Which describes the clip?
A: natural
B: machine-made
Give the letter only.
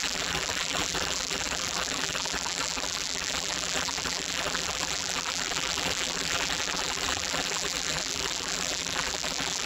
B